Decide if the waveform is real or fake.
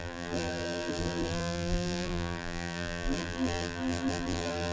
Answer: fake